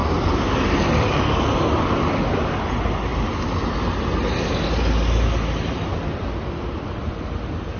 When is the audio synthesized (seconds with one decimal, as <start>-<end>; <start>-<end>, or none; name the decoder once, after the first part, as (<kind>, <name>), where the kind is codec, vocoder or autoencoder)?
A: none